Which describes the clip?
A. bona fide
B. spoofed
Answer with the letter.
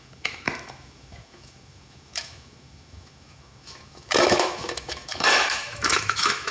B